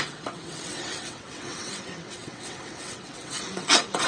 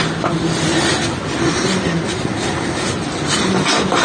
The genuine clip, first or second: second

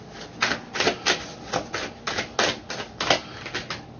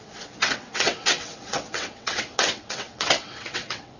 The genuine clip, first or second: first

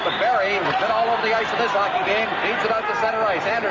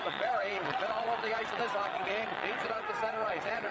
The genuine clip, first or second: first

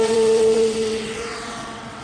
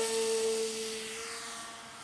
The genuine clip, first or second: second